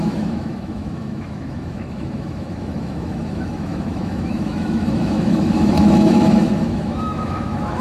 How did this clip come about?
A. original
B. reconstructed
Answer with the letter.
B